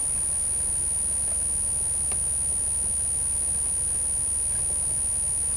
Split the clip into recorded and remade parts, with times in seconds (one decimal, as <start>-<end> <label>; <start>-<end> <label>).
0.0-5.6 recorded